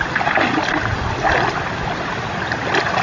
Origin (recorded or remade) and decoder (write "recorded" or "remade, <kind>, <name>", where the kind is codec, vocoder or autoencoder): recorded